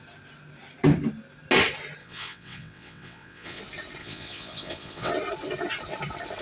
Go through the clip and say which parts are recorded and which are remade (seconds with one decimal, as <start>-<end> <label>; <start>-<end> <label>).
0.0-2.0 recorded; 2.0-3.6 remade; 3.6-4.0 recorded; 4.0-5.1 remade; 5.1-6.4 recorded